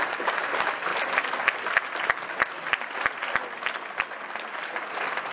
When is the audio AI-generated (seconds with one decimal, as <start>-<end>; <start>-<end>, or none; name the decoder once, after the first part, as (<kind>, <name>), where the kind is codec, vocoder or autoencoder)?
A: none